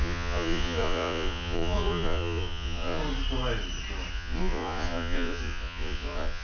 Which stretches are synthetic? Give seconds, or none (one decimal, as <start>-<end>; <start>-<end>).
0.0-3.0; 4.1-6.4